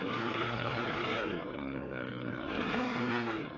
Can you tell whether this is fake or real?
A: fake